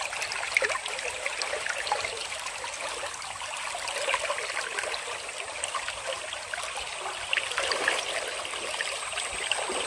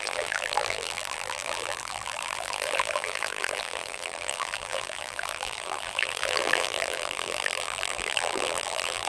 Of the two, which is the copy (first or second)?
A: second